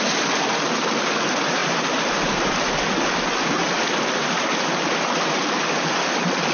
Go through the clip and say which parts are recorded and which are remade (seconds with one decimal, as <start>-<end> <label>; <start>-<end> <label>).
0.0-6.5 recorded